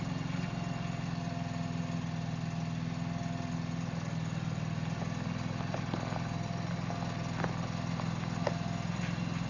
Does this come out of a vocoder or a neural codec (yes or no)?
no